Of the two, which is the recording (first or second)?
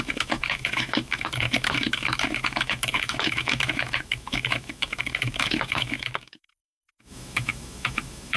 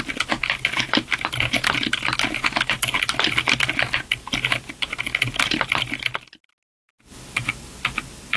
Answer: second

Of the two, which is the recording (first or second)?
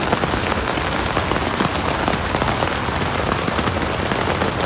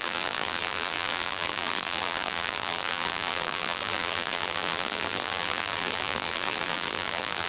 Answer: first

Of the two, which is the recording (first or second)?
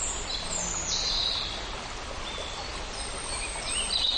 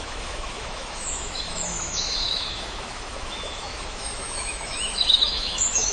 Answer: first